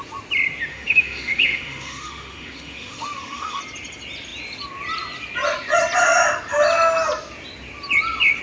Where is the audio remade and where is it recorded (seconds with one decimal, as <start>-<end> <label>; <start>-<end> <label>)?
0.0-0.7 recorded; 0.7-3.6 remade; 3.6-8.4 recorded